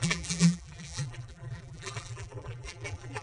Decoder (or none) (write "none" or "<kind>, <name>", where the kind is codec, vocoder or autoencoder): vocoder, BigVGAN v2